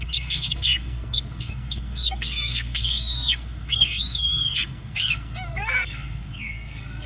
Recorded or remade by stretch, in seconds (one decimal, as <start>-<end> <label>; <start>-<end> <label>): 0.0-7.1 remade